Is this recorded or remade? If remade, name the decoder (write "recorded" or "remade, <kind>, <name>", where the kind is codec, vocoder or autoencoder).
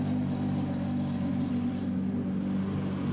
recorded